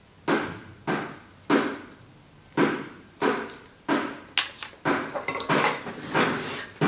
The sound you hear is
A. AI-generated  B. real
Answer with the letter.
B